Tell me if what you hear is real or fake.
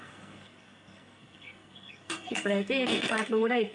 fake